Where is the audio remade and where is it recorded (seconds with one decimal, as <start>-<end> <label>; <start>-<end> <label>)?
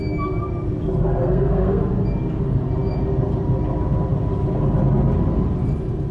0.0-1.2 recorded; 1.2-1.8 remade; 1.8-6.1 recorded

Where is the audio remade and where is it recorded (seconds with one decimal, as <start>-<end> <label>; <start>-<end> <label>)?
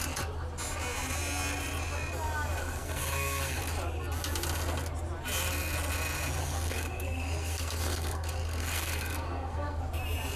0.0-2.6 recorded; 2.6-3.6 remade; 3.6-6.4 recorded; 6.4-9.8 remade; 9.8-10.4 recorded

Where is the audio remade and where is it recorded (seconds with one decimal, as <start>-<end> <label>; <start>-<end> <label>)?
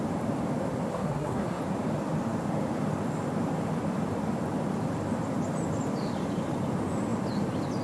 0.0-0.9 recorded; 0.9-1.6 remade; 1.6-7.8 recorded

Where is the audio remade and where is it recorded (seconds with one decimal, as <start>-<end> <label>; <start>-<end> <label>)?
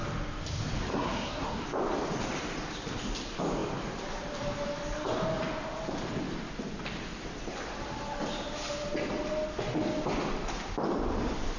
0.0-0.9 recorded; 0.9-1.6 remade; 1.6-11.6 recorded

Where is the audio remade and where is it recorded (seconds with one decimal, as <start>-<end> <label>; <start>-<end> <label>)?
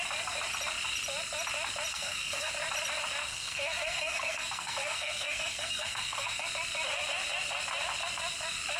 0.0-1.9 recorded; 1.9-2.5 remade; 2.5-3.2 recorded; 3.2-6.5 remade; 6.5-8.8 recorded